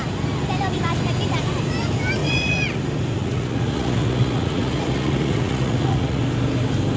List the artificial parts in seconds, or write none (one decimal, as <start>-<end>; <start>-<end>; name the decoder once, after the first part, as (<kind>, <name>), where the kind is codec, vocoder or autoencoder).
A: 2.2-2.8 (vocoder, Vocos); 3.2-6.2